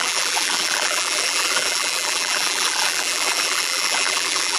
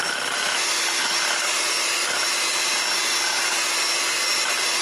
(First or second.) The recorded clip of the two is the second